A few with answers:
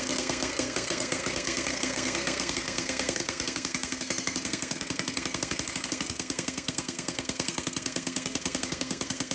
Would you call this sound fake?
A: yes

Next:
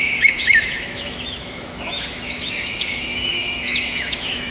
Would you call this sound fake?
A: yes